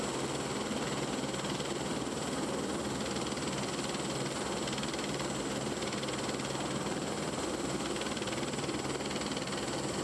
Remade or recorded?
recorded